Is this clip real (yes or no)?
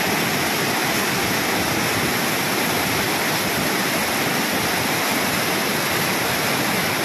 yes